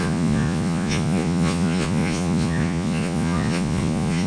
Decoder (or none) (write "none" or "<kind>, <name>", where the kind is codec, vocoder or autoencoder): vocoder, Vocos